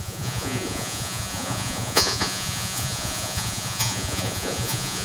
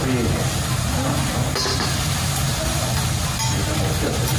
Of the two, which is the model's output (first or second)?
first